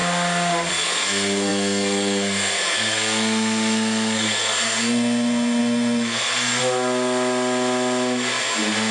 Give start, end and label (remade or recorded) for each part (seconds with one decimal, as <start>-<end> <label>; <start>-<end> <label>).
0.0-0.7 recorded; 0.7-6.6 remade; 6.6-8.9 recorded